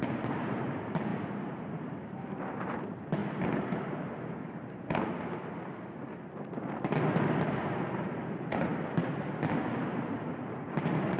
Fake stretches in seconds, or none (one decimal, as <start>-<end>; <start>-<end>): 0.0-3.2; 7.6-8.7; 9.7-11.2